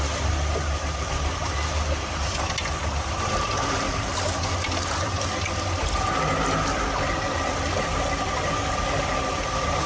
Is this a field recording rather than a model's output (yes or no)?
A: yes